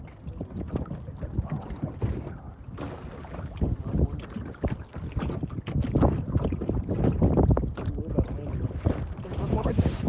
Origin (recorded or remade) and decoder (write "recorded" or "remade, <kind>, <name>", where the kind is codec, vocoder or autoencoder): recorded